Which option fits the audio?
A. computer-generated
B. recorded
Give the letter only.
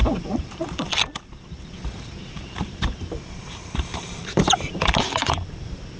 A